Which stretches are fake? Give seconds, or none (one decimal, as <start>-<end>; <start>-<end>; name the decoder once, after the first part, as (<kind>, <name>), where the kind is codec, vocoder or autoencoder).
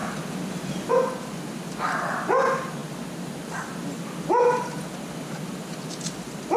none